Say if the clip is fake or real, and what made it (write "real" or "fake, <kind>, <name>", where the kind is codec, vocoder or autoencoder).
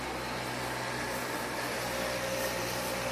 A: real